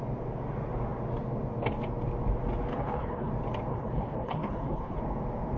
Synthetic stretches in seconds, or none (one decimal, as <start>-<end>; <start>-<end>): 2.7-3.3; 3.7-5.0

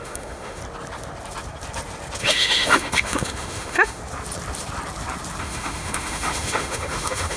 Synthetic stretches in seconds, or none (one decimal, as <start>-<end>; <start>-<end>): 0.0-0.6; 2.2-4.0; 5.4-7.4

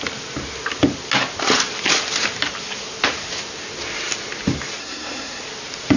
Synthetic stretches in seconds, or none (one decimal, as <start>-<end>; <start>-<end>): 4.8-5.4

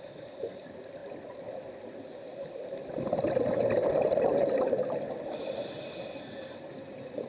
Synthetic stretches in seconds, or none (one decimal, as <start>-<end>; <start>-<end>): none

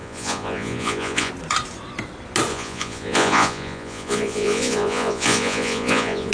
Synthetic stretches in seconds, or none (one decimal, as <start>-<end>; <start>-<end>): 0.0-1.3; 2.5-6.3

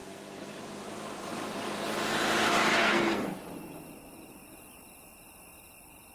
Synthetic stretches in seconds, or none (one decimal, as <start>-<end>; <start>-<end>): 0.0-0.6; 2.8-3.4

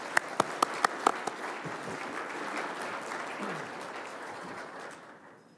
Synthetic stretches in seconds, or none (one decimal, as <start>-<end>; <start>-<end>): 4.1-4.8

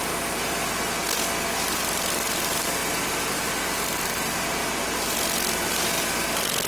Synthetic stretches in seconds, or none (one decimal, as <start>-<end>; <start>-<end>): none